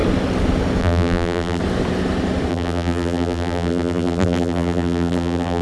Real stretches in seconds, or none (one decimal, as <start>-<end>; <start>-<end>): 0.0-0.8; 1.6-2.5